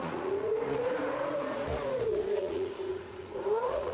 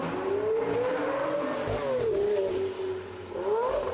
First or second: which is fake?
first